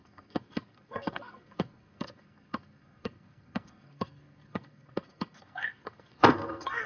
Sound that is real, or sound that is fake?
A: fake